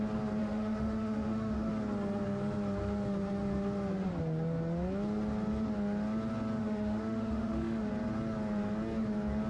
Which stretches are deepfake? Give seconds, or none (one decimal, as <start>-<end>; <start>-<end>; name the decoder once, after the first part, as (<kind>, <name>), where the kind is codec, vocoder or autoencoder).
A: 0.4-1.7 (autoencoder, DAC-VAE); 6.6-7.9